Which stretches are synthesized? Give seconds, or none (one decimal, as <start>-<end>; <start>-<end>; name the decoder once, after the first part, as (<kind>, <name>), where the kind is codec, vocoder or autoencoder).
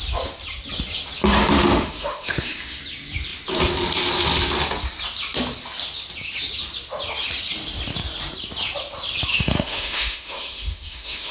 1.5-2.8 (autoencoder, DAC-VAE); 9.3-11.3